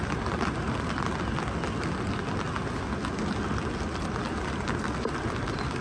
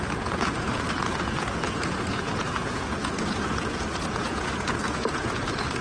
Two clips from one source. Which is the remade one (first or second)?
second